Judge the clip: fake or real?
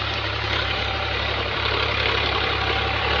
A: fake